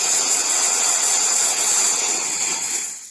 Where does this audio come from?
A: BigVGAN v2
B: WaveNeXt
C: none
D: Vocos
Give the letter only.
B